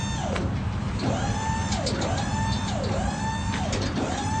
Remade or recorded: recorded